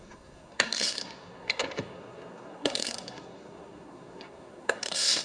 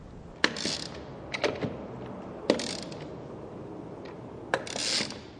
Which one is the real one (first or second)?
second